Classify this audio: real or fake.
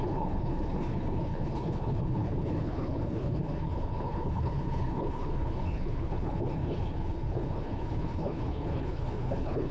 fake